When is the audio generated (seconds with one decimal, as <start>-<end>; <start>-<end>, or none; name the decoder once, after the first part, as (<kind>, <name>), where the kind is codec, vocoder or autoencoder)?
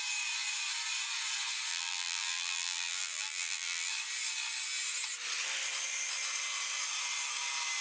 1.7-3.9 (vocoder, BigVGAN v2)